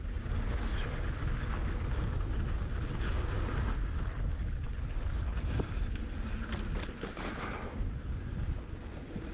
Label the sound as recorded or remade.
recorded